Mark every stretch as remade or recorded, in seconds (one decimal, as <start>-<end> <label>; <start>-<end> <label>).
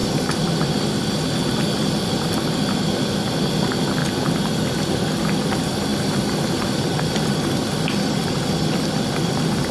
0.0-9.7 recorded